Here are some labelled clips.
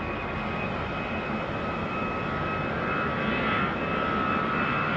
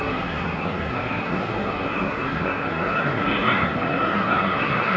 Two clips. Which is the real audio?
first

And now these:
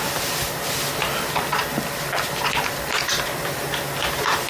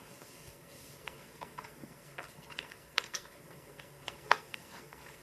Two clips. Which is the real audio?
first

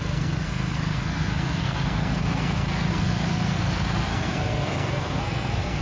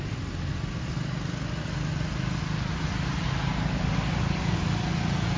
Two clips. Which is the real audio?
second